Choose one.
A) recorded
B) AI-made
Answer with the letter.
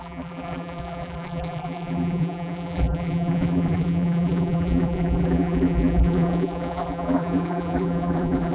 B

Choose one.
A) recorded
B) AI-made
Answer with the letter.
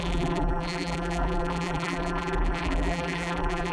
B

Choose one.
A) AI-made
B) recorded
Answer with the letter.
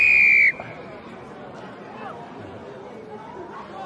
B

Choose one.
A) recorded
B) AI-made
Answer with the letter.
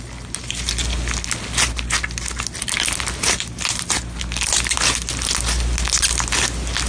A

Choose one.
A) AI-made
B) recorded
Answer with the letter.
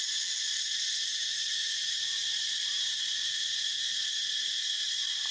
A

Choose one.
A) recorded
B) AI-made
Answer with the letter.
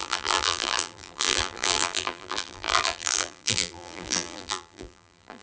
B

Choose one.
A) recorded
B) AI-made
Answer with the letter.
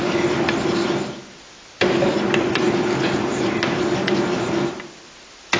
A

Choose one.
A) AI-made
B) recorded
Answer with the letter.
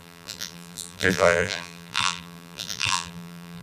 A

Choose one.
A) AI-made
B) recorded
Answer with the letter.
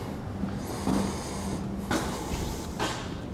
B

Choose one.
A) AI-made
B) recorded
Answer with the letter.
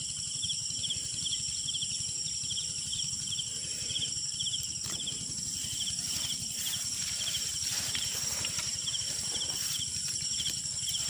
A